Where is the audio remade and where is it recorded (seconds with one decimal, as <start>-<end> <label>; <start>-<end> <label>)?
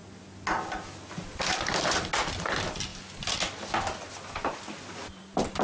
0.0-1.3 recorded; 1.3-2.1 remade; 2.1-5.6 recorded